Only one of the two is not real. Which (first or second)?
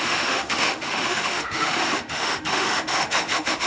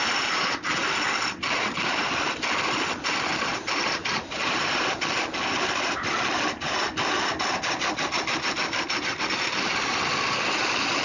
first